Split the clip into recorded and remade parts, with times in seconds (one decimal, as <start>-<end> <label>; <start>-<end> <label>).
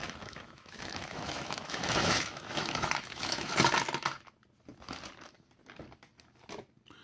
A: 0.0-3.5 remade; 3.5-7.0 recorded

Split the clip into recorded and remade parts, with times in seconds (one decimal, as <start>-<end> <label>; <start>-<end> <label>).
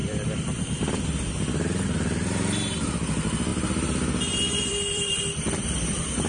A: 0.0-1.4 remade; 1.4-3.5 recorded; 3.5-5.2 remade; 5.2-6.3 recorded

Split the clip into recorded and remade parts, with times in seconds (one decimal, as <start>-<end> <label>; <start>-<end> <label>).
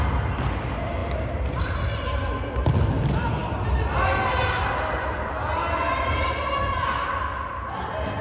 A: 0.0-8.2 recorded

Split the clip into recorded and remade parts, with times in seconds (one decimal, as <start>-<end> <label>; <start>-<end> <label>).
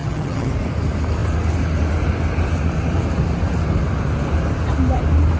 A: 0.0-0.5 remade; 0.5-5.4 recorded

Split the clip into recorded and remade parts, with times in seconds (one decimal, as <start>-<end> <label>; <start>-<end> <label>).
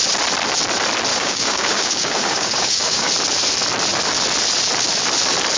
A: 0.0-1.1 recorded; 1.1-3.1 remade; 3.1-5.6 recorded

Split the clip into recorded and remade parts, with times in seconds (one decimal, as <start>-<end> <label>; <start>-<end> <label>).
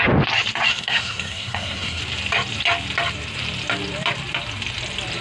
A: 0.0-0.7 recorded; 0.7-2.0 remade; 2.0-5.2 recorded